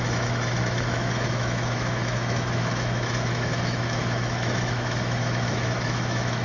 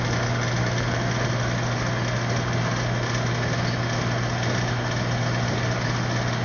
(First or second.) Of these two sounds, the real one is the second